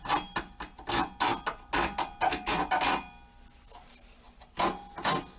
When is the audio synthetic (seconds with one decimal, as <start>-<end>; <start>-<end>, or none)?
none